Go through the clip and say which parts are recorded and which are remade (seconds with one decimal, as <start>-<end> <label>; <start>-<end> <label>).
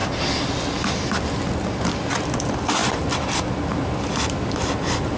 0.0-0.8 recorded; 0.8-5.2 remade